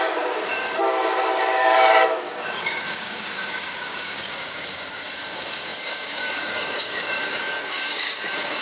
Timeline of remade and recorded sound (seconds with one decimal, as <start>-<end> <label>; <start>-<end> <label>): 0.0-8.6 remade